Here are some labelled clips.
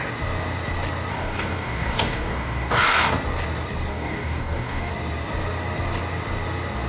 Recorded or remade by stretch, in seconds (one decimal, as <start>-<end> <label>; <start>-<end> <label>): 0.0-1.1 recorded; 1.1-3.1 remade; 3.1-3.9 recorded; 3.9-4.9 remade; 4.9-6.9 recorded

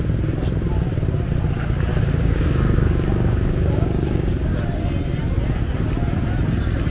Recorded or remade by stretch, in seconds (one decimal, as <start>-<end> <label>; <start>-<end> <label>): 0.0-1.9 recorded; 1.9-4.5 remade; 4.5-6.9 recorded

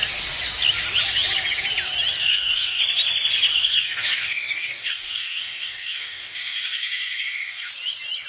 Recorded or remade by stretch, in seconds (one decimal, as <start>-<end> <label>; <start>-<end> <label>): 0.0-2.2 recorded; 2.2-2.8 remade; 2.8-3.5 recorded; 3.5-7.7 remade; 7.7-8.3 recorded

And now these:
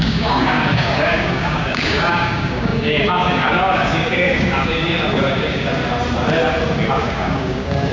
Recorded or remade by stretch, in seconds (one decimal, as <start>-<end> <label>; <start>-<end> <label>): 0.0-5.8 remade; 5.8-6.9 recorded; 6.9-7.9 remade

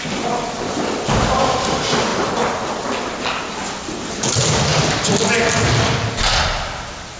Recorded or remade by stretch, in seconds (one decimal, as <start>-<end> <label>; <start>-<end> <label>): 0.0-7.2 recorded